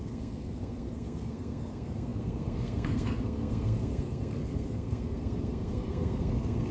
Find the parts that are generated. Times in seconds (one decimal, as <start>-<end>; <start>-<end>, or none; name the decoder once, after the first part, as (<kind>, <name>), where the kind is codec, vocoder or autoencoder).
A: 0.0-6.7 (codec, SNAC)